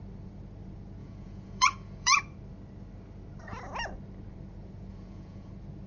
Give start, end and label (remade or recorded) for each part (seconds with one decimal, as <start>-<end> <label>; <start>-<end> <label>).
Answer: 0.0-1.0 recorded; 1.0-2.2 remade; 2.2-4.9 recorded; 4.9-5.5 remade; 5.5-5.9 recorded